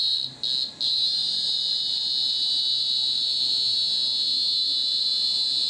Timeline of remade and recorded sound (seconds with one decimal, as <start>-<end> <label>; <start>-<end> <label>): 0.0-5.7 recorded